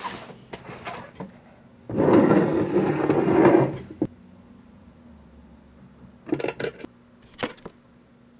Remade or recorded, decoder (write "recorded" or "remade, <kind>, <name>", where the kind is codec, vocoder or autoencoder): recorded